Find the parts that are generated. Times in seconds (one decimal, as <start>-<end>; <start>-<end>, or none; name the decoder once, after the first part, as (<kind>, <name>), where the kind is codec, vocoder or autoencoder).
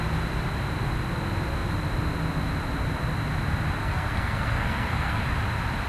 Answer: 3.8-5.2 (codec, SNAC)